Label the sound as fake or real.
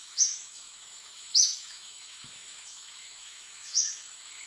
fake